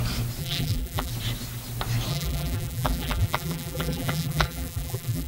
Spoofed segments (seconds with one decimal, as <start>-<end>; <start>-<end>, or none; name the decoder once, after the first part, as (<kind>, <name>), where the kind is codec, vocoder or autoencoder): 0.4-1.1 (vocoder, BigVGAN v2); 2.1-5.3